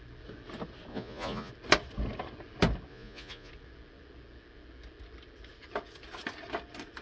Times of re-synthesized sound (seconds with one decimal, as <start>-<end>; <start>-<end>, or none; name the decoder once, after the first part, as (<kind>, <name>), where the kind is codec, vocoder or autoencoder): 0.9-1.5 (vocoder, Vocos); 2.9-3.5